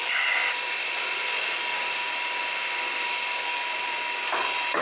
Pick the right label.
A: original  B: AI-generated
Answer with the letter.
B